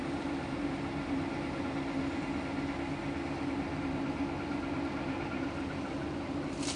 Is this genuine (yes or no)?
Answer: yes